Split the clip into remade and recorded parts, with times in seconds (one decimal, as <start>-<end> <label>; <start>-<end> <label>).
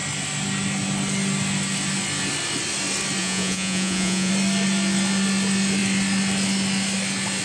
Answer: 0.0-3.2 recorded; 3.2-4.3 remade; 4.3-7.4 recorded